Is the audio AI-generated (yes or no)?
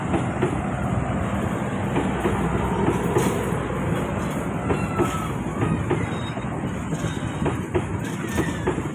no